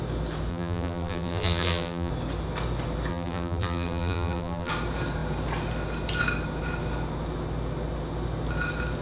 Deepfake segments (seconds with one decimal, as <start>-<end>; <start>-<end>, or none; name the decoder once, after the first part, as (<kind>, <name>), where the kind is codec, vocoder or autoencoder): 0.5-2.1 (vocoder, BigVGAN v2); 3.1-4.7